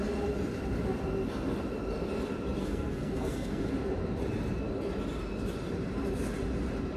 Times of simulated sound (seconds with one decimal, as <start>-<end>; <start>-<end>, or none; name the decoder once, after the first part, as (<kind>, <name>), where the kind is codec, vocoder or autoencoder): 2.6-3.7 (codec, SNAC)